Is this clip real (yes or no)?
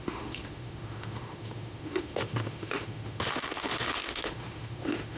no